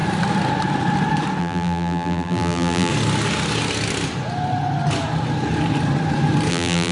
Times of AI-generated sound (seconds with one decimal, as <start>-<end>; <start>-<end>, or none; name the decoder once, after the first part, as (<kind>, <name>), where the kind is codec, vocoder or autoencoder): 1.4-2.9 (vocoder, BigVGAN v2); 6.5-6.9